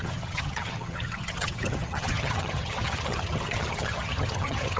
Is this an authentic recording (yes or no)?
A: no